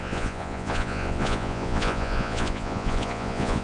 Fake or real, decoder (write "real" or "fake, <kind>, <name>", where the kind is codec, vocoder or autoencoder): fake, vocoder, Vocos